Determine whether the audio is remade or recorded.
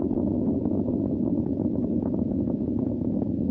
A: recorded